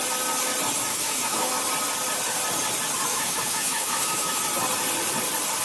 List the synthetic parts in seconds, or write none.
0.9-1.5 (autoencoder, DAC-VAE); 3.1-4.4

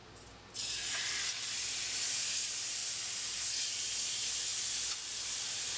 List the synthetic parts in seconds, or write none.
0.0-1.2 (vocoder, BigVGAN v2); 4.5-5.8

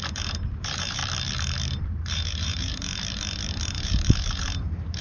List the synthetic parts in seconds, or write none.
0.0-1.0 (vocoder, BigVGAN v2); 1.8-2.9; 3.6-5.0

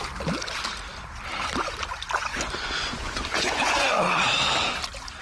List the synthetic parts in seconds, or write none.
2.3-3.9 (vocoder, Vocos)

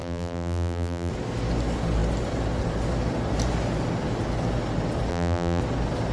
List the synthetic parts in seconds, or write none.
0.0-1.1 (vocoder, BigVGAN v2); 5.1-5.6

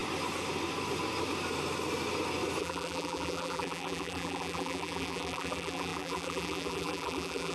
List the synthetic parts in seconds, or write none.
2.6-7.5 (vocoder, BigVGAN v2)